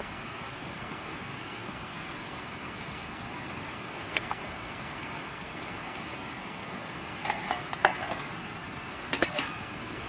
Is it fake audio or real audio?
fake